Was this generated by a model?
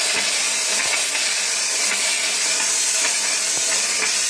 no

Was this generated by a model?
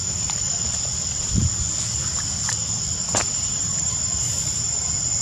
no